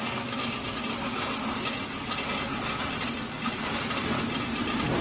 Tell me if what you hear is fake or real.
real